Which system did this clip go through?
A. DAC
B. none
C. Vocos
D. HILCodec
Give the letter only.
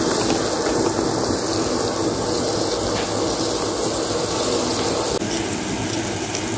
B